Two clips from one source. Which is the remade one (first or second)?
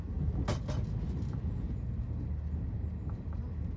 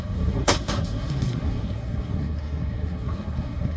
second